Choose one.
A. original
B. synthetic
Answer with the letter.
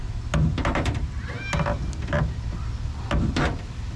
A